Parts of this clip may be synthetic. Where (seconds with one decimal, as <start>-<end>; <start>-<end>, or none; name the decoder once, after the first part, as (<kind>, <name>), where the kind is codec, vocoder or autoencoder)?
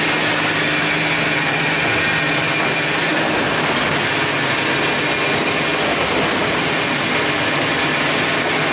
none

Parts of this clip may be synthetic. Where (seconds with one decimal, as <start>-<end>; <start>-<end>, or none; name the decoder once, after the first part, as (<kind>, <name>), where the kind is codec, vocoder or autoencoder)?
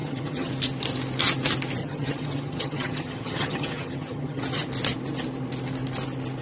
0.0-0.5 (vocoder, HiFi-GAN); 1.8-4.4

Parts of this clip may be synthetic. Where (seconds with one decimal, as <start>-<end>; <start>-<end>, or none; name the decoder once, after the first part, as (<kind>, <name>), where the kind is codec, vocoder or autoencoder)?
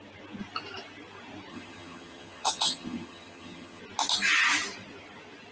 1.5-3.8 (vocoder, HiFi-GAN)